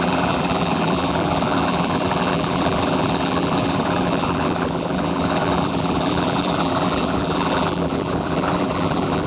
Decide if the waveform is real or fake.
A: fake